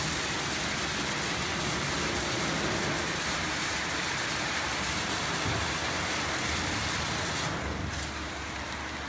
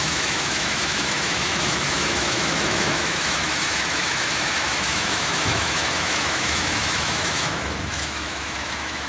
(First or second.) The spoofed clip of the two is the second